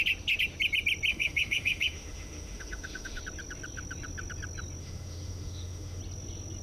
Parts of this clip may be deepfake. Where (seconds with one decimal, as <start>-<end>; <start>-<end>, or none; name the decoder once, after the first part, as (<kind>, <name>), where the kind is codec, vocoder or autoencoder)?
1.1-3.2 (autoencoder, DAC-VAE); 4.8-6.0